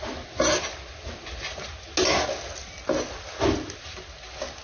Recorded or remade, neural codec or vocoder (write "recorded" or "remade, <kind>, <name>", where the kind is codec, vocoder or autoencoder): recorded